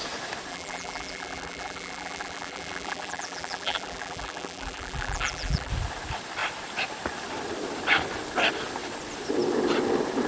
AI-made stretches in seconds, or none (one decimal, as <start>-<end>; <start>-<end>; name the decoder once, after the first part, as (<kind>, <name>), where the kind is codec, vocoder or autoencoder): 0.5-5.7 (vocoder, BigVGAN v2)